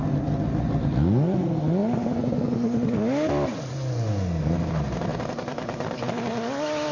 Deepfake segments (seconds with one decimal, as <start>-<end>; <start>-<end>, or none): none